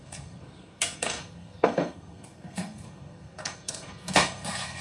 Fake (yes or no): yes